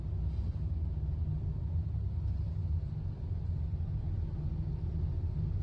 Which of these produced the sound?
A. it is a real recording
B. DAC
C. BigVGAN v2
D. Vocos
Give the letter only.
A